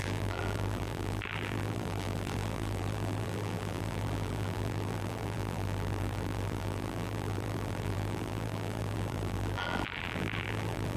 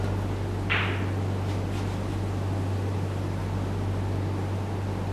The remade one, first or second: first